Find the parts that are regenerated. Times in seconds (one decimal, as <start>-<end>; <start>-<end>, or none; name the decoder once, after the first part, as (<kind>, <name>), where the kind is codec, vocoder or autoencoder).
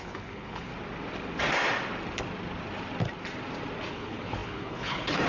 0.0-0.7 (codec, HILCodec); 3.9-5.3